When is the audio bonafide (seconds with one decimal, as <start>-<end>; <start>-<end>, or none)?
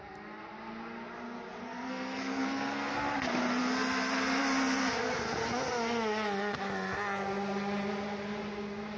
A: 0.0-1.6; 2.9-9.0